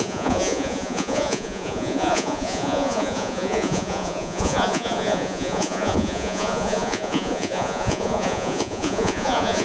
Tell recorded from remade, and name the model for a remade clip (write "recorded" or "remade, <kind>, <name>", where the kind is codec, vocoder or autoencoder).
remade, vocoder, Vocos